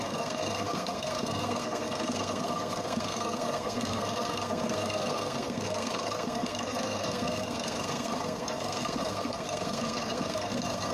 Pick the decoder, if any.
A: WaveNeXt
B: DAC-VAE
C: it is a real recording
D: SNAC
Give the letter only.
D